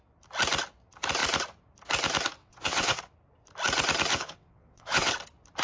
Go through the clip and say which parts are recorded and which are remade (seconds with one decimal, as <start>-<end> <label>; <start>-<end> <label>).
0.0-2.4 recorded; 2.4-3.0 remade; 3.0-4.1 recorded; 4.1-5.1 remade; 5.1-5.6 recorded